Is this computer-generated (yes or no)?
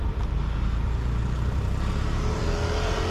no